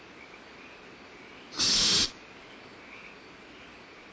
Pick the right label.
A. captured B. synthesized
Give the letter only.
A